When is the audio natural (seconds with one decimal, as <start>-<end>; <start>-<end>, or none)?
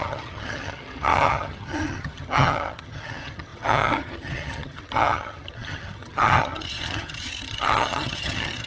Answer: none